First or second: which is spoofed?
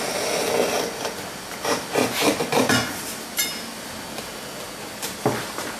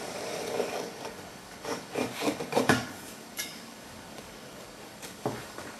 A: second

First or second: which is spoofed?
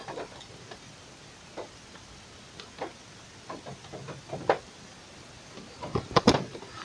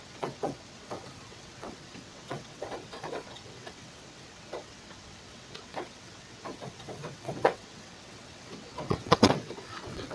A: second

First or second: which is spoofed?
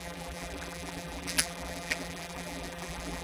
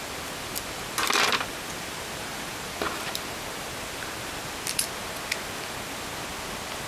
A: first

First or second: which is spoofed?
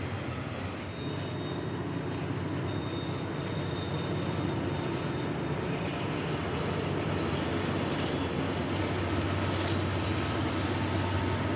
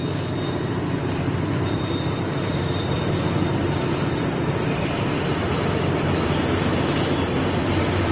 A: second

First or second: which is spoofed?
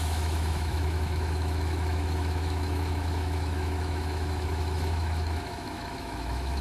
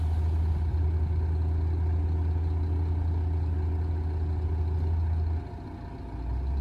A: first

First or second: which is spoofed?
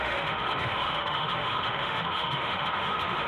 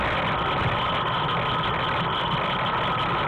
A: first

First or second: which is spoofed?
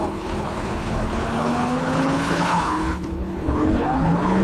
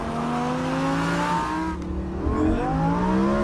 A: first